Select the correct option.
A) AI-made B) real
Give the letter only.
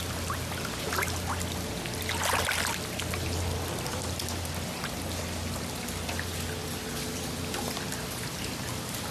B